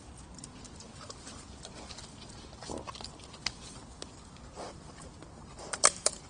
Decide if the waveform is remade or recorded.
recorded